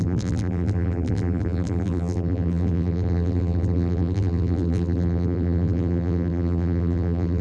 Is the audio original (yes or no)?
no